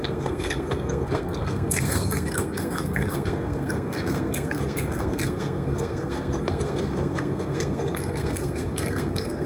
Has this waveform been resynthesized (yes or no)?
yes